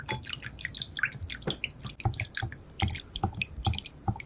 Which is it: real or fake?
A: real